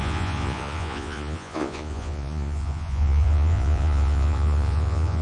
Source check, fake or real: fake